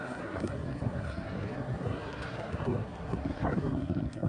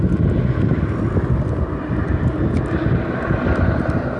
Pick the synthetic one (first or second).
first